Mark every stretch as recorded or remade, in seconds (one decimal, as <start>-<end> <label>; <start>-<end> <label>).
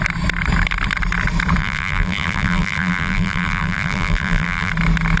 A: 0.0-1.6 recorded; 1.6-4.7 remade; 4.7-5.2 recorded